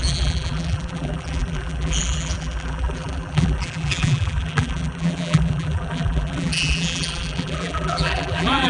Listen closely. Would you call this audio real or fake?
fake